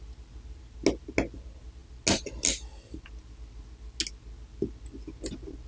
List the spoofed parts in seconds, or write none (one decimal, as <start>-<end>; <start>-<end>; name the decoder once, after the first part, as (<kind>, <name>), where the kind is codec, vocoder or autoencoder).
none